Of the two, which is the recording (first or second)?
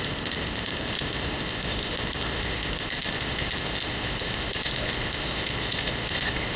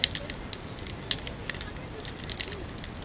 second